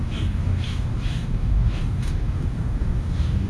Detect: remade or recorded remade